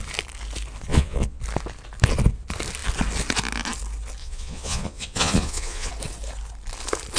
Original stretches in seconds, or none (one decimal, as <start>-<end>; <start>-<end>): 0.0-0.9; 1.4-4.2; 5.9-7.2